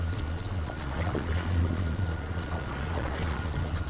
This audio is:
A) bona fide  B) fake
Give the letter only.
B